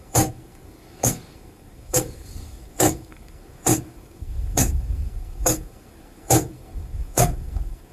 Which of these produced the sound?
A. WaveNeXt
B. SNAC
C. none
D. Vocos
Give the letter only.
B